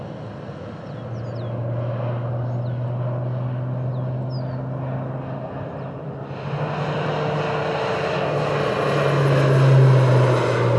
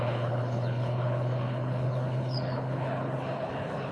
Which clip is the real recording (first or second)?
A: first